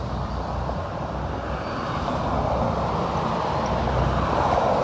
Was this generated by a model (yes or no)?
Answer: no